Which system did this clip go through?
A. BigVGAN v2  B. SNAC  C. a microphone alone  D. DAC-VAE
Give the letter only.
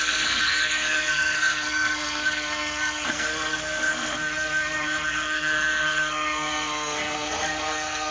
B